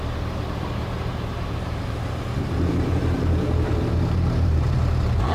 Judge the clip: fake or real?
fake